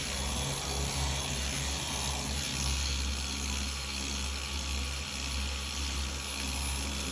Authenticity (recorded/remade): recorded